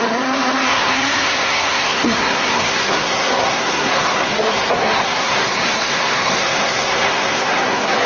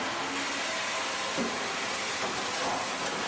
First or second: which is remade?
first